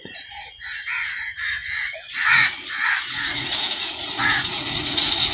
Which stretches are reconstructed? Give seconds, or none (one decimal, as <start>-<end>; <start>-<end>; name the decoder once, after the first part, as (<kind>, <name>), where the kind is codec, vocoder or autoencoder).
0.0-5.3 (vocoder, Vocos)